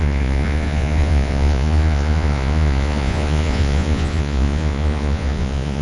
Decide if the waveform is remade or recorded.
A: remade